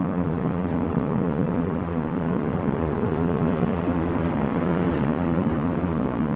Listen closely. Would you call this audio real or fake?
fake